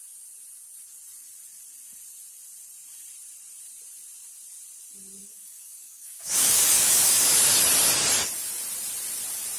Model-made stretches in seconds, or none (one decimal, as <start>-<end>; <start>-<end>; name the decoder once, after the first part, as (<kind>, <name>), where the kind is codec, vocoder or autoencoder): 5.2-7.6 (codec, DAC)